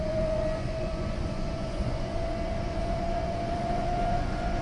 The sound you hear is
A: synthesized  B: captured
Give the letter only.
A